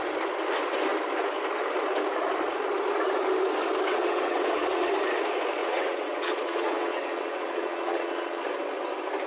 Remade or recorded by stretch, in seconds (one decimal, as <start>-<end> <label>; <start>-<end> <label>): 0.0-3.9 recorded; 3.9-4.9 remade; 4.9-5.6 recorded; 5.6-8.4 remade; 8.4-9.3 recorded